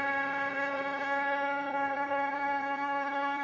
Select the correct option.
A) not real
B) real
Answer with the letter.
A